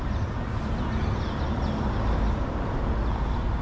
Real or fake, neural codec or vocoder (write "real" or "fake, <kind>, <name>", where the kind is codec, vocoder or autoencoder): real